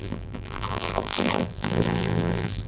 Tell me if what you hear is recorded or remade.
remade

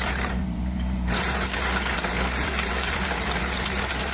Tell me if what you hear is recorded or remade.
remade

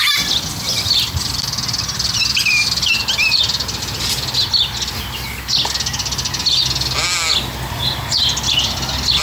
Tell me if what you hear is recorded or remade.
recorded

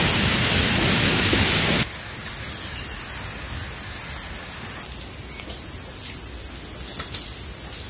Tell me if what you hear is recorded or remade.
recorded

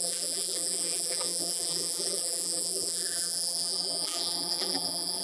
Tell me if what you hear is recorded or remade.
remade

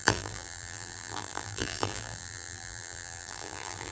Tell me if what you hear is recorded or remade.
remade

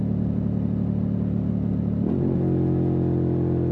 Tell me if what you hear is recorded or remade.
recorded